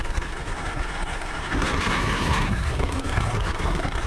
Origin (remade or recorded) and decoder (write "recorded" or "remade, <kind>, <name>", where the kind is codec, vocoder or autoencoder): remade, codec, SNAC